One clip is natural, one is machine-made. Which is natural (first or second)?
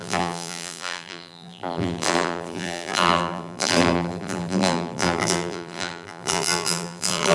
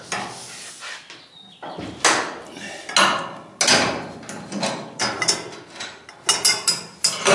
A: second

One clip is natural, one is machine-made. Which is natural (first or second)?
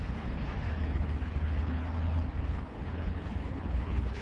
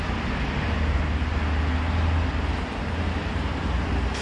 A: second